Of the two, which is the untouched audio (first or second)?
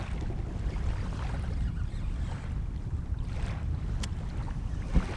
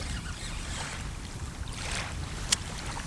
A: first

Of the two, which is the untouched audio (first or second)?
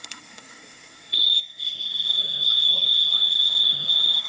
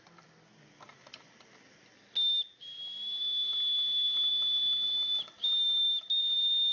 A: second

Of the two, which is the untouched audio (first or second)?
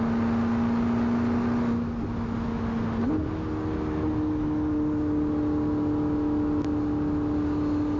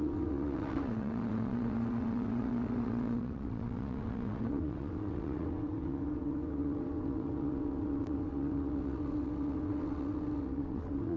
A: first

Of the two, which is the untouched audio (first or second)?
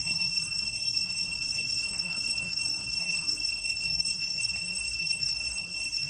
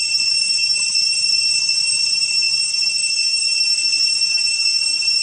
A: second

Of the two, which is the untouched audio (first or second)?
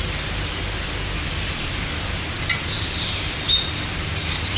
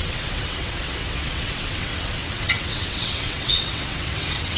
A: first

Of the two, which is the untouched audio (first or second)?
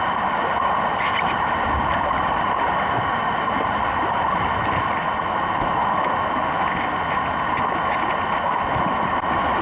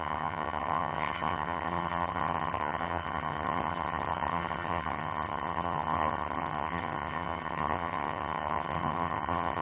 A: first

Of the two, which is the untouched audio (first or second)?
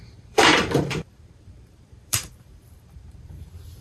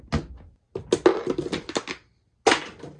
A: second